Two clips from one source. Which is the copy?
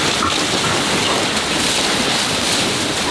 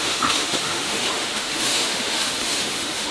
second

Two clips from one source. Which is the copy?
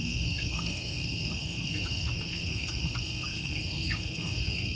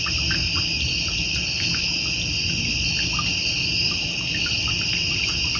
first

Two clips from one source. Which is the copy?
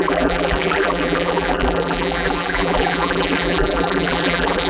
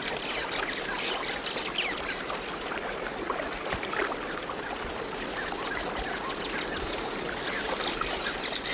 first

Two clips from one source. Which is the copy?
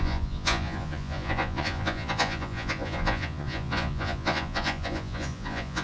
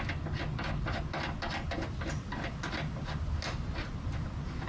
first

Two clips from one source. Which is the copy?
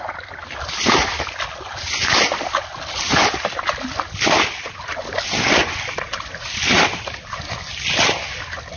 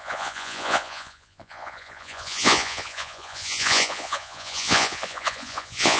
second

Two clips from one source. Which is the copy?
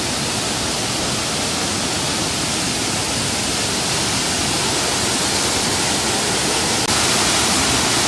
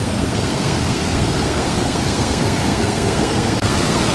second